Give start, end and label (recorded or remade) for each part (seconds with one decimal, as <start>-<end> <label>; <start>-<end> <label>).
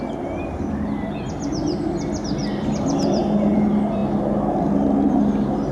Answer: 0.0-2.4 recorded; 2.4-3.2 remade; 3.2-5.7 recorded